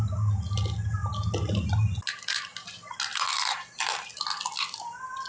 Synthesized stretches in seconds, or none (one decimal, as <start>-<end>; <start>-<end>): none